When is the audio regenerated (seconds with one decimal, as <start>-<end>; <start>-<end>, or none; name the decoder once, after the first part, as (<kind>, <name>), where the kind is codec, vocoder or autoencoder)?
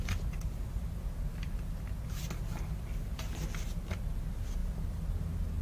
none